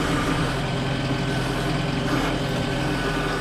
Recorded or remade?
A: recorded